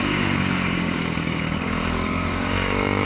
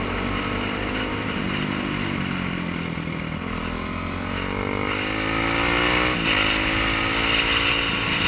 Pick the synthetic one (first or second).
first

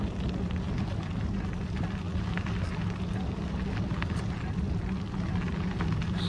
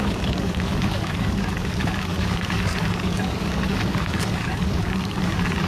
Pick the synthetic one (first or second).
second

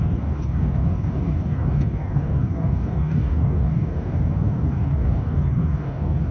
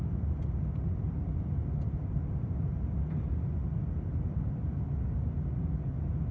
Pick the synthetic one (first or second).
first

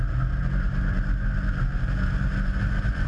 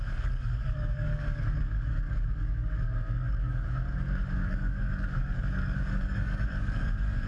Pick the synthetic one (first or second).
second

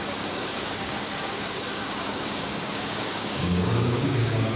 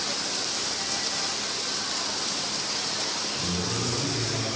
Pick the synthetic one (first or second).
first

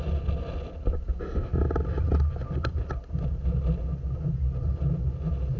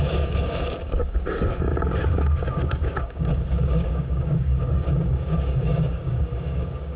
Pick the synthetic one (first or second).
second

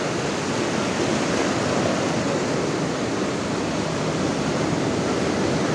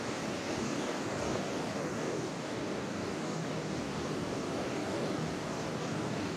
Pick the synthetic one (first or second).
second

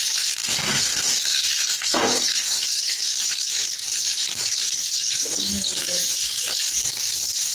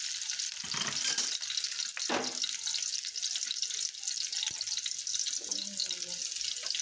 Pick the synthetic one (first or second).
first